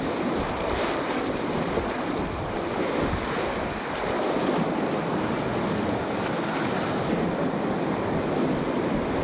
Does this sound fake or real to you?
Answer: real